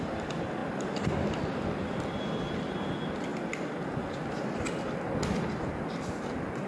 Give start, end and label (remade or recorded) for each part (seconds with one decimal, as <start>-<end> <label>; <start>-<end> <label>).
0.0-6.7 recorded